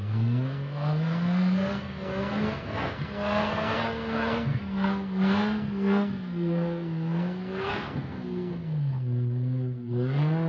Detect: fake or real fake